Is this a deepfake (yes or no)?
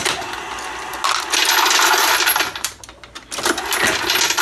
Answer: no